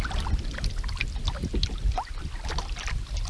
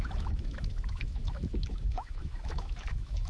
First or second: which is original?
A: first